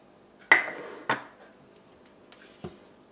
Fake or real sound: real